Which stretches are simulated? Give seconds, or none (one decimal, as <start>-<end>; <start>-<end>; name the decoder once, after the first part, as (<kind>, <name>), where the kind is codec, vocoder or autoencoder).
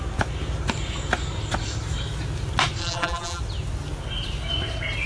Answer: 2.8-3.4 (vocoder, BigVGAN v2)